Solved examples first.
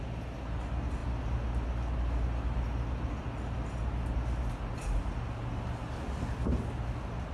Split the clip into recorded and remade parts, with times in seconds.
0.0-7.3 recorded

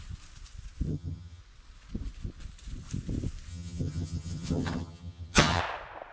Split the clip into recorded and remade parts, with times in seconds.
0.0-0.9 recorded; 0.9-1.4 remade; 1.4-3.5 recorded; 3.5-5.6 remade; 5.6-6.1 recorded